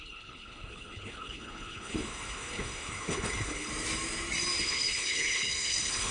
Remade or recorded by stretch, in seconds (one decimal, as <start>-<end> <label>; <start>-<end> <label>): 0.0-3.7 remade; 3.7-4.6 recorded; 4.6-6.1 remade